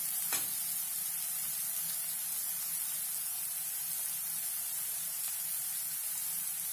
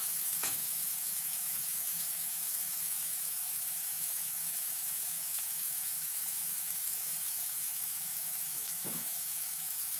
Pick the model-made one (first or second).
second